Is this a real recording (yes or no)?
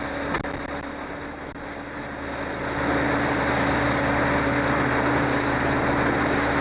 yes